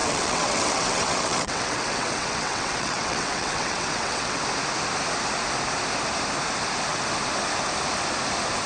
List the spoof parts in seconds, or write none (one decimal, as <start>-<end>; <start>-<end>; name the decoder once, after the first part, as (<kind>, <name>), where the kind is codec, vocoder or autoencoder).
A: 0.0-4.4 (vocoder, WaveNeXt)